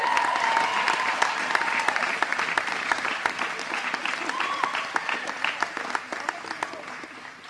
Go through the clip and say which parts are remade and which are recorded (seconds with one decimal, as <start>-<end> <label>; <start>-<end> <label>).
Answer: 0.0-7.5 remade